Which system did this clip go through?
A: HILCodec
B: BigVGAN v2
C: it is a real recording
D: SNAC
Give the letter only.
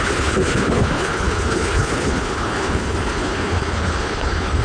A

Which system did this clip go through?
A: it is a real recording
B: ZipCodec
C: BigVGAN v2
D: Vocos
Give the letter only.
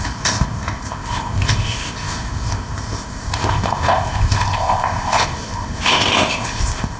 B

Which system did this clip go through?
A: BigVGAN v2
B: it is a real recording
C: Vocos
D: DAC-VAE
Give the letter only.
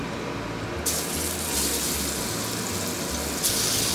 B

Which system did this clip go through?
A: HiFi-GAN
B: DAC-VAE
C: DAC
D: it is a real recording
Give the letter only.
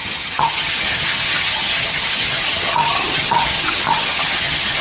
A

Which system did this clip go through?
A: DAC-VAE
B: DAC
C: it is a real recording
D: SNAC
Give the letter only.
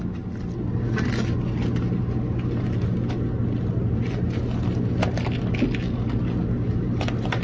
C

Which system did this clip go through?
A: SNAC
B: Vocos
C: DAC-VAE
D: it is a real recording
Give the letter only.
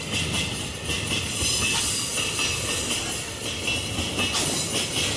D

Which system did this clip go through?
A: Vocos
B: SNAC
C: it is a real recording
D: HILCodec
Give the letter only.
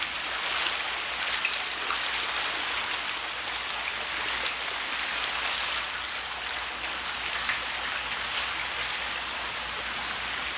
C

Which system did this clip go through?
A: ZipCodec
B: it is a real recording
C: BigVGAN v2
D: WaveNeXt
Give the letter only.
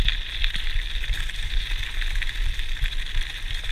B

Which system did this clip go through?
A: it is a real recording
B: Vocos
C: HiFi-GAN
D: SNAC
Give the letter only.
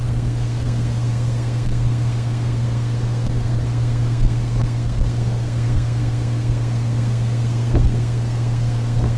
D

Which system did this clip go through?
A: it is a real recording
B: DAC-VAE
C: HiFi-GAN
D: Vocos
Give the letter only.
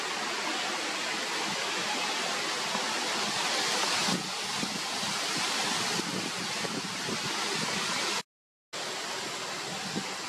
A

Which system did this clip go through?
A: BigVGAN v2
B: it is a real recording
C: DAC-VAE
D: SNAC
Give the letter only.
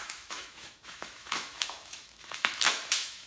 C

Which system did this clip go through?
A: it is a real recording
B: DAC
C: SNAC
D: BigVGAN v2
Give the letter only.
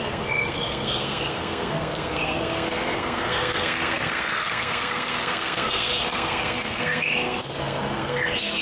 C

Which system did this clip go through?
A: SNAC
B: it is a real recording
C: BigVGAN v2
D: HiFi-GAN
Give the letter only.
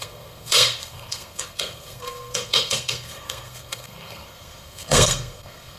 A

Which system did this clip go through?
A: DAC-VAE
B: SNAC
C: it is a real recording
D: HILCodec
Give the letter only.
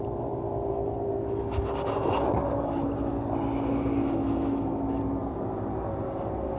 C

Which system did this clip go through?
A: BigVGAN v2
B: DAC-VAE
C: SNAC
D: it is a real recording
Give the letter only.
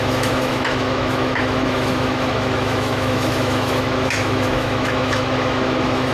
B